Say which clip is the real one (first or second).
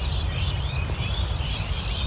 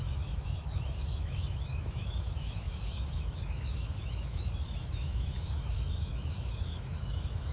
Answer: first